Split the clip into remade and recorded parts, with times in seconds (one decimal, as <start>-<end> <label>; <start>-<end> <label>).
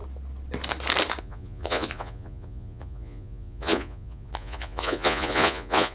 0.0-1.2 recorded; 1.2-5.9 remade